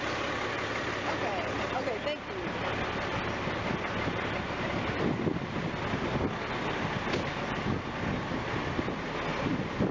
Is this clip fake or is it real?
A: real